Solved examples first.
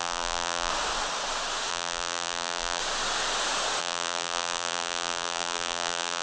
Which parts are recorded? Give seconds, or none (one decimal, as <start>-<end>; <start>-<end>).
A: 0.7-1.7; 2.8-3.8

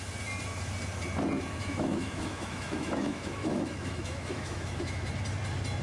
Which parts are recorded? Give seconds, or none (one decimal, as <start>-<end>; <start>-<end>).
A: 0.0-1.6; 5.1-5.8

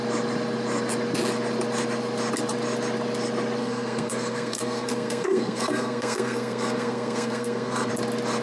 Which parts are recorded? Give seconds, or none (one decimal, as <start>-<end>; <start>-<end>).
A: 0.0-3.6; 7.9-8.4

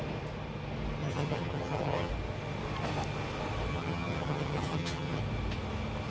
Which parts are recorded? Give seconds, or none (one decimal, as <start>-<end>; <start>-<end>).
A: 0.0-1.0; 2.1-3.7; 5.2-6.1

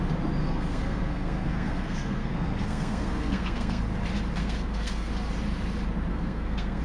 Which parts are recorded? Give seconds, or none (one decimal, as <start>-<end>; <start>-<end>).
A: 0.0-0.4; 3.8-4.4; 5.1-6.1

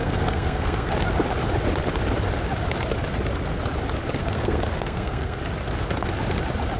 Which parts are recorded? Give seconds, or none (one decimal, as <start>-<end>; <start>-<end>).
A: 0.9-4.2; 5.4-6.8

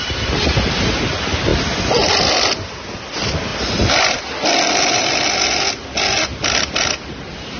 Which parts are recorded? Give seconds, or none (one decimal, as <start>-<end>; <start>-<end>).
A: 0.0-7.6

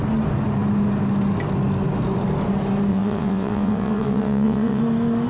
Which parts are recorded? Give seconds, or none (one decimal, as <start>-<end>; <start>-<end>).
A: 0.0-2.9; 4.8-5.3